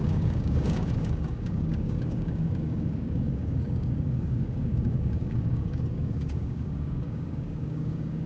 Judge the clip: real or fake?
fake